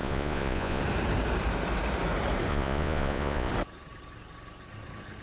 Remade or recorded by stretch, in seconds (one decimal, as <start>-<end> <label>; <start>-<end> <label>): 0.0-0.8 remade; 0.8-2.5 recorded; 2.5-3.5 remade; 3.5-5.2 recorded